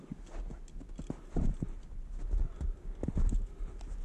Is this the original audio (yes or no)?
yes